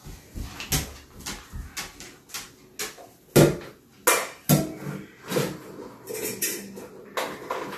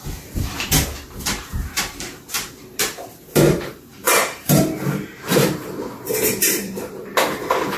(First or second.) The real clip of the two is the first